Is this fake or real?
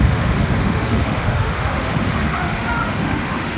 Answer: fake